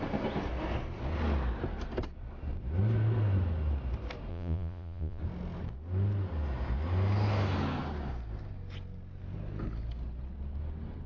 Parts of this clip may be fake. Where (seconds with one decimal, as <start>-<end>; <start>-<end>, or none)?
4.3-5.2